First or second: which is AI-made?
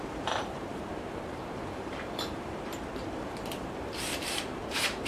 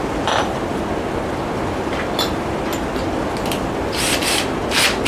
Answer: first